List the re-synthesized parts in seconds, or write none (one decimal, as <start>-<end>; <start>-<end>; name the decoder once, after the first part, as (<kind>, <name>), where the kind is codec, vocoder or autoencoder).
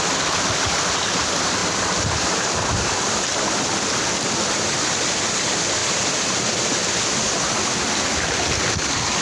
5.8-6.9 (vocoder, BigVGAN v2)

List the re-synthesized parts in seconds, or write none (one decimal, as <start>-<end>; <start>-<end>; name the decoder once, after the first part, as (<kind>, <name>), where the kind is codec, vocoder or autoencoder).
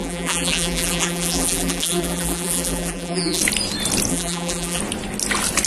0.0-3.4 (vocoder, BigVGAN v2); 4.1-4.8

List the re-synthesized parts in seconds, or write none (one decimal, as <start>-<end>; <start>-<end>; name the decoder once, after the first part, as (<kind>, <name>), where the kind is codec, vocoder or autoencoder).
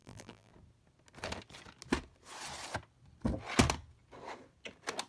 0.0-0.5 (vocoder, BigVGAN v2)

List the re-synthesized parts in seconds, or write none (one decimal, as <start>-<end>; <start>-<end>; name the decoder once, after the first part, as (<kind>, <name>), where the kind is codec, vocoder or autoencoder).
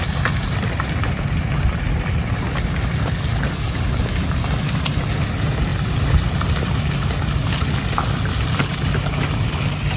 none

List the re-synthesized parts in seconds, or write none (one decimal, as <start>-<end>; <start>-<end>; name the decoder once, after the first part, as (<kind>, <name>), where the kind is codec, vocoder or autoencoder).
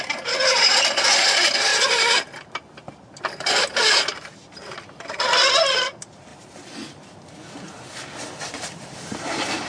0.0-1.7 (vocoder, BigVGAN v2); 2.9-4.6; 5.6-6.3; 8.5-9.7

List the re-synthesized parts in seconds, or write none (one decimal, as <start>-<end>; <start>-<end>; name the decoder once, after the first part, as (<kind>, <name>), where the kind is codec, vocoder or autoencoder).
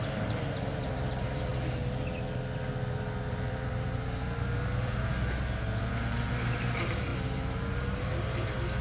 0.0-1.5 (vocoder, BigVGAN v2); 3.3-5.1; 6.3-8.8